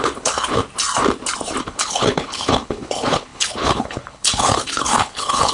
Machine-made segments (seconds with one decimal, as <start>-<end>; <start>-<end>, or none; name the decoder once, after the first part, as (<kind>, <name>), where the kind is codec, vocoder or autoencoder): 0.0-0.6 (codec, HILCodec); 1.6-5.5